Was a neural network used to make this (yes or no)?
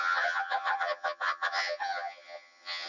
yes